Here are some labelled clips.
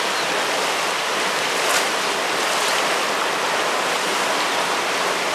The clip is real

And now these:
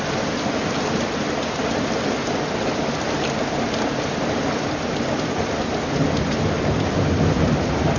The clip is real